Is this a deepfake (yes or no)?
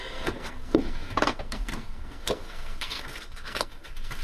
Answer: yes